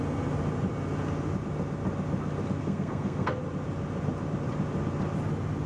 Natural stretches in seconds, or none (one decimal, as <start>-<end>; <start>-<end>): 0.0-2.6; 3.4-5.7